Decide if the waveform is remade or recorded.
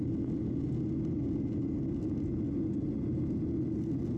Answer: recorded